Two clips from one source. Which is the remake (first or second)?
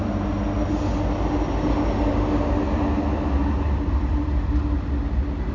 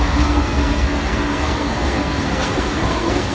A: second